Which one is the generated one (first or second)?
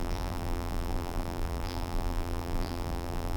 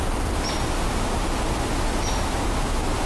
first